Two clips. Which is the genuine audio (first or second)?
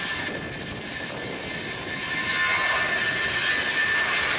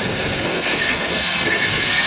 first